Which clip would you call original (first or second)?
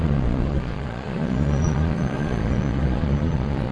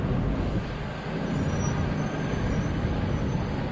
second